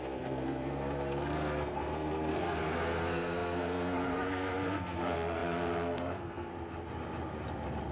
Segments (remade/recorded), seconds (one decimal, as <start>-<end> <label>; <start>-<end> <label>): 0.0-6.5 remade; 6.5-7.9 recorded